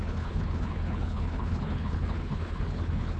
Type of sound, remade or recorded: remade